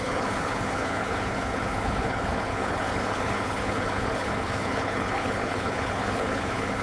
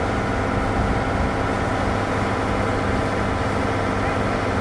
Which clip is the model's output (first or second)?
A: first